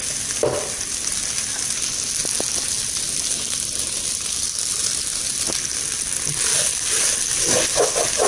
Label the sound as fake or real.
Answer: real